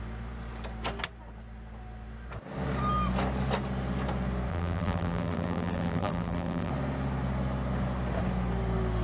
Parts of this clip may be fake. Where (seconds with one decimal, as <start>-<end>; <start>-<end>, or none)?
4.5-6.7